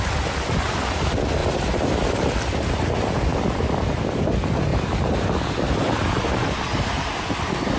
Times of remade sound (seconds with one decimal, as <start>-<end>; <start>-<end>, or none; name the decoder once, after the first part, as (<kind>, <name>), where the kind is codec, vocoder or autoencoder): 3.3-4.1 (vocoder, BigVGAN v2); 4.7-5.4